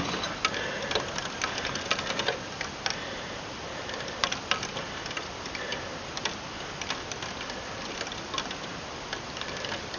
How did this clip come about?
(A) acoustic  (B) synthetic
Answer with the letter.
A